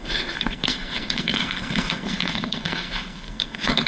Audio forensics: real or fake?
fake